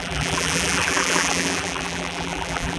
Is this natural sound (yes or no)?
no